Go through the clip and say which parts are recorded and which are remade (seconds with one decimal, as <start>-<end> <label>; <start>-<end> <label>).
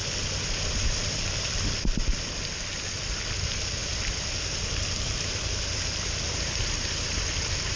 0.0-2.4 remade; 2.4-3.8 recorded; 3.8-7.2 remade; 7.2-7.8 recorded